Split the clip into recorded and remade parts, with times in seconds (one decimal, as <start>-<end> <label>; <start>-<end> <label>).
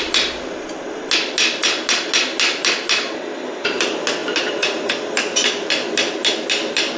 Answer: 0.0-7.0 recorded